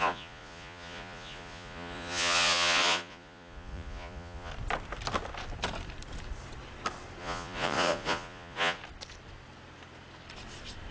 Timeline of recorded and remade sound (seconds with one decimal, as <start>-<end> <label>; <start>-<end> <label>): 0.0-4.5 remade; 4.5-7.2 recorded; 7.2-8.8 remade; 8.8-10.9 recorded